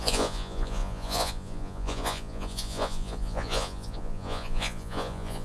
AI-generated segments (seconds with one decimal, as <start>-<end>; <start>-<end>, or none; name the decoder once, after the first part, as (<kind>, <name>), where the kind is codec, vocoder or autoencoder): 0.0-5.4 (vocoder, Vocos)